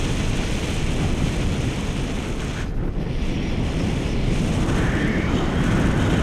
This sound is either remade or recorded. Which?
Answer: recorded